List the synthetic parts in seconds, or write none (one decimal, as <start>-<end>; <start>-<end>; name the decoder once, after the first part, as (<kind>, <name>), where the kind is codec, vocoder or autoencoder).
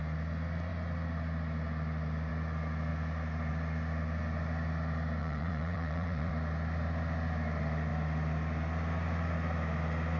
5.2-6.3 (vocoder, WaveNeXt)